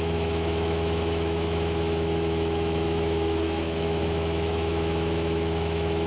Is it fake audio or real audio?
fake